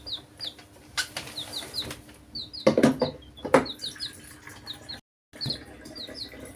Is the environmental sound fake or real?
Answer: real